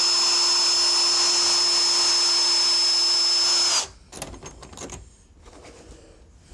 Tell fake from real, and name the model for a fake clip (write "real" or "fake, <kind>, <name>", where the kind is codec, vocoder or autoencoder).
real